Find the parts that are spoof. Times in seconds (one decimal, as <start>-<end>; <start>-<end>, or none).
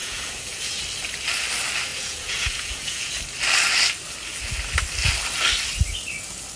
0.0-0.8; 1.9-3.1